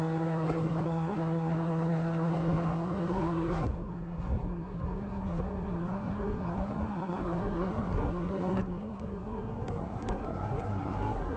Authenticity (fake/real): fake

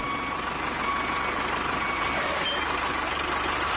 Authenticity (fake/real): real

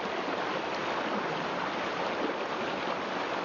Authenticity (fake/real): real